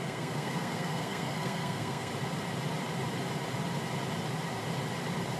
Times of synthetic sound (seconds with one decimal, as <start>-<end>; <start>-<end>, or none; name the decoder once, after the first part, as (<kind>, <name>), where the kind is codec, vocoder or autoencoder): 0.0-2.1 (codec, SNAC)